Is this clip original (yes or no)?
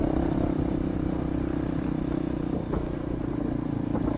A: yes